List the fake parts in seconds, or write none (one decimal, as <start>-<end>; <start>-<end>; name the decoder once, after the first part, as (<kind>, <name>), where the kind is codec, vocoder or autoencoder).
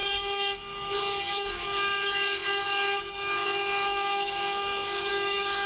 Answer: 0.0-5.7 (autoencoder, DAC-VAE)